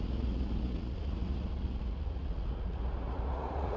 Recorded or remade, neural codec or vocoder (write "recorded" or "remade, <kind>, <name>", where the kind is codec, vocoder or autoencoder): remade, vocoder, Vocos